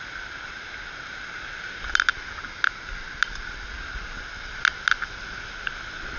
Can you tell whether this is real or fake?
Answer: real